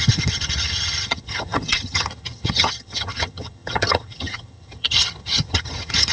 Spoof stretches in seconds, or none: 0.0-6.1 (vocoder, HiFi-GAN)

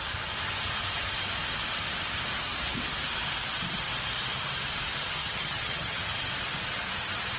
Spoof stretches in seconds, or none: 5.2-6.1 (vocoder, HiFi-GAN)

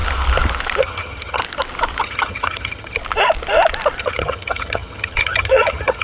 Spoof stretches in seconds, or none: 0.8-1.4 (vocoder, HiFi-GAN); 2.0-3.0; 4.0-6.0

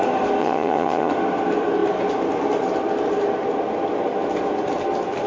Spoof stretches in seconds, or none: 0.4-1.1 (vocoder, HiFi-GAN)